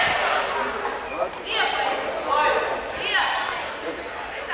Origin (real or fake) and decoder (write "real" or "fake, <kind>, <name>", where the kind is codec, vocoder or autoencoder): real